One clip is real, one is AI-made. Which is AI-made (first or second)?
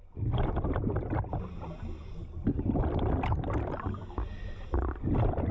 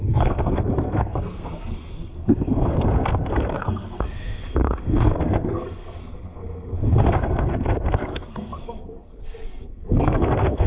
second